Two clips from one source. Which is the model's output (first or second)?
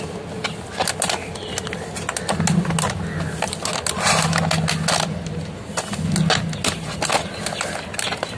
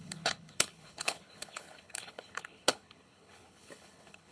second